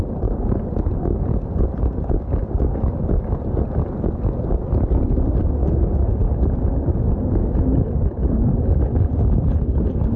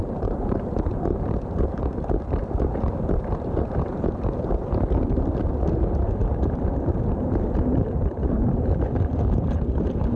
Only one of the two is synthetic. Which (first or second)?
second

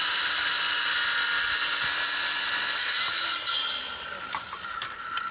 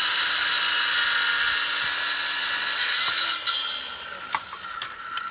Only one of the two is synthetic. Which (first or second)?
first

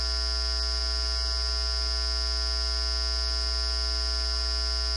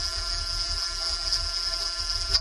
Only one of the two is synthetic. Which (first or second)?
second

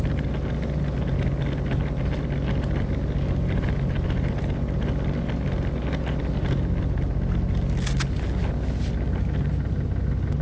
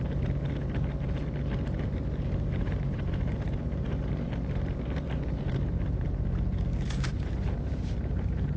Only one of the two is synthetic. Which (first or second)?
second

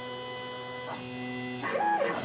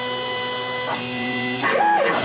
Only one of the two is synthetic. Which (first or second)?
second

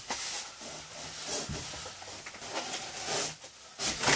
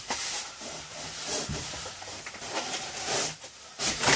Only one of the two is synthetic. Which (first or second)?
second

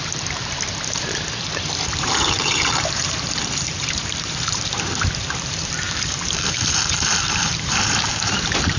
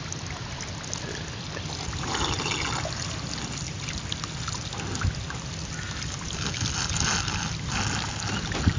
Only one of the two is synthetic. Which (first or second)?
first